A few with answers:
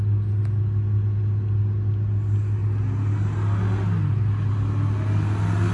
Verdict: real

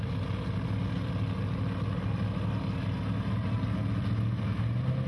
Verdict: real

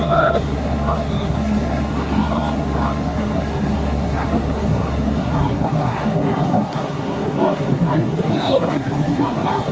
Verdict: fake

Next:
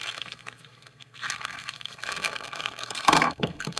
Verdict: fake